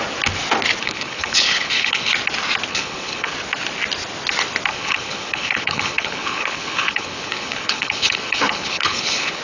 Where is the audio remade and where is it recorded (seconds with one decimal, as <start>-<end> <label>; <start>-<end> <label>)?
0.0-0.8 recorded; 0.8-2.1 remade; 2.1-2.7 recorded; 2.7-3.3 remade; 3.3-4.7 recorded; 4.7-9.4 remade